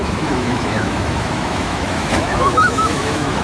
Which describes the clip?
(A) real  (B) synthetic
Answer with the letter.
B